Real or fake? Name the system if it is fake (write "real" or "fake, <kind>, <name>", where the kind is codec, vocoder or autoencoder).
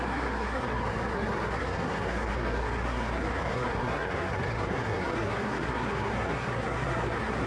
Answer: fake, codec, SNAC